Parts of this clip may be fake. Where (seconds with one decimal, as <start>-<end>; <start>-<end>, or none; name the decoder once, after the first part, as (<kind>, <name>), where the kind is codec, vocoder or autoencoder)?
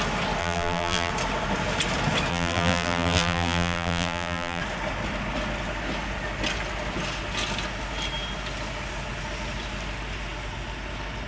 0.4-1.1 (vocoder, BigVGAN v2); 2.3-4.6